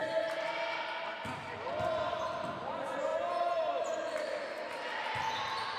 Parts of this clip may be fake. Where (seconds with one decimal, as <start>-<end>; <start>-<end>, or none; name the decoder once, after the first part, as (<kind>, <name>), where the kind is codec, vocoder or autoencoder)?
3.1-3.8 (vocoder, BigVGAN v2)